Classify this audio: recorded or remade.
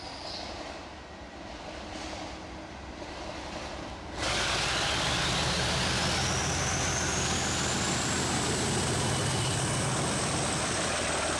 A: recorded